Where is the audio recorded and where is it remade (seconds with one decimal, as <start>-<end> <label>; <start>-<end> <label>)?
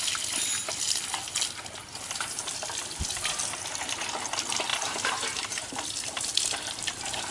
0.0-4.7 recorded; 4.7-5.7 remade; 5.7-7.3 recorded